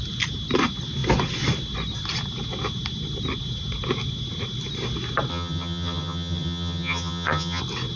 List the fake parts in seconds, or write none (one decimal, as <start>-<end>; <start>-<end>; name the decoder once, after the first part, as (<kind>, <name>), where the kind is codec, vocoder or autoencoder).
5.3-7.6 (vocoder, HiFi-GAN)